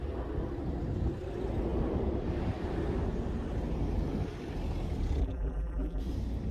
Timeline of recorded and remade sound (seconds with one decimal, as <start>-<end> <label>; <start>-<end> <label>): 0.0-5.2 recorded; 5.2-6.0 remade; 6.0-6.5 recorded